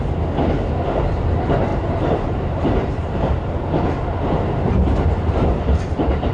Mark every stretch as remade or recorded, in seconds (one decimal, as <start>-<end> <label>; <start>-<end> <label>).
0.0-1.7 recorded; 1.7-3.5 remade; 3.5-6.3 recorded